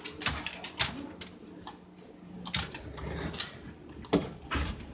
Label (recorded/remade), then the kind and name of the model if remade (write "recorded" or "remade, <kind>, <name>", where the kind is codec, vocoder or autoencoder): recorded